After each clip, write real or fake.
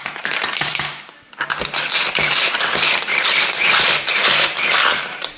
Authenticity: fake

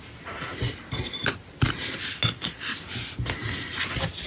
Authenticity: real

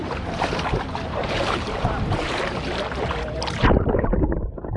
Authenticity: fake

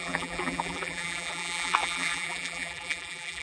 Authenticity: fake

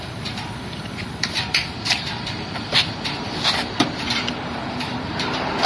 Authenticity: fake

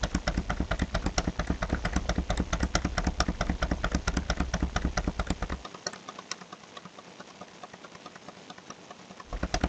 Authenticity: real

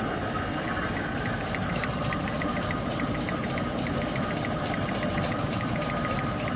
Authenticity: fake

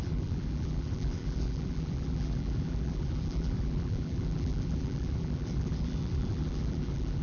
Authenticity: fake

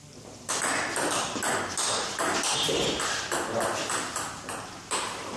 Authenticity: real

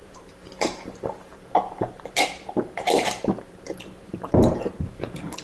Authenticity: fake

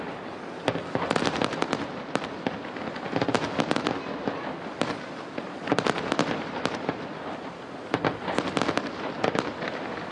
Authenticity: real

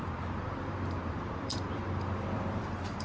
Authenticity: fake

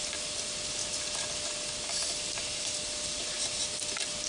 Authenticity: real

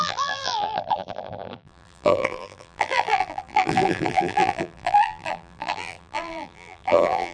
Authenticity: fake